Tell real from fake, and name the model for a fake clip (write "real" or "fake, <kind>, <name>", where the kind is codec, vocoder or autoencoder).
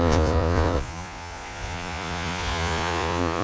fake, vocoder, Vocos